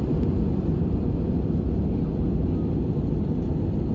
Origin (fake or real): real